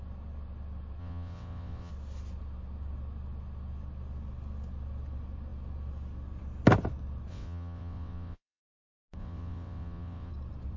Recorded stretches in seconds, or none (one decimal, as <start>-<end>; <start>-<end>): 0.0-1.0; 1.9-7.3; 8.6-9.2; 10.3-10.8

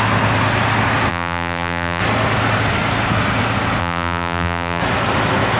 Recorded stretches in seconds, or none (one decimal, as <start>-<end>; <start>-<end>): 0.0-1.1; 2.0-3.8; 4.8-5.6

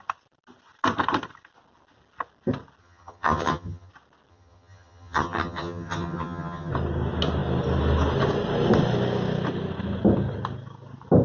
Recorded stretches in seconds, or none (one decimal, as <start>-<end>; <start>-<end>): 0.0-2.8; 3.9-4.3; 6.7-11.2

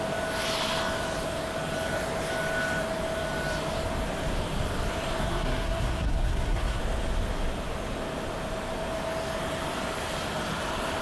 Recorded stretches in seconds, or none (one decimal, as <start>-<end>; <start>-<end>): 0.0-5.2; 6.8-11.0

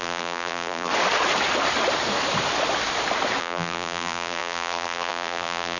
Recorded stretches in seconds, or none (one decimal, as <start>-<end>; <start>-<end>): 0.9-3.4

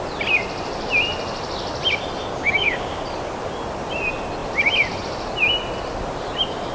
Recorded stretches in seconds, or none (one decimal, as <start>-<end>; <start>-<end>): 0.0-2.3; 3.0-6.7

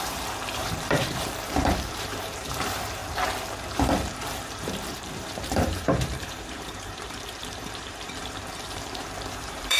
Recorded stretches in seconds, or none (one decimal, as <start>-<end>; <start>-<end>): 3.0-3.6